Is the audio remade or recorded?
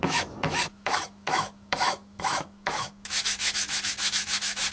remade